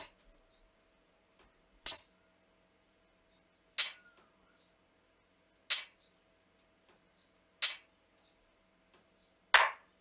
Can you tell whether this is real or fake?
real